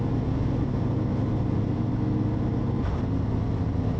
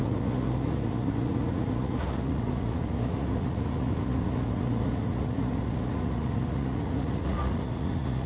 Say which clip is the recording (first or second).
first